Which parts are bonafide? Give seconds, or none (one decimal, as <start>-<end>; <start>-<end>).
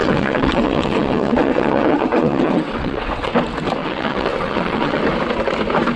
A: 3.3-3.8; 5.0-6.0